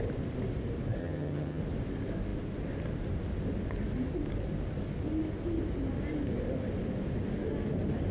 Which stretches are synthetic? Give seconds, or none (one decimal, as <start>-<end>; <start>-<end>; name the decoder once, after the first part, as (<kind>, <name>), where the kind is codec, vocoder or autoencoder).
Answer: 1.0-1.6 (vocoder, HiFi-GAN)